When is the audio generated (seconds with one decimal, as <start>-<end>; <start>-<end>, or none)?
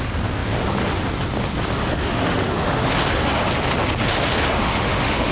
1.8-2.9; 4.6-5.3